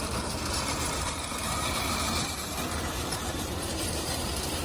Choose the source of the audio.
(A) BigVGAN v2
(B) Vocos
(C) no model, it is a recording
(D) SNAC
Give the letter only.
A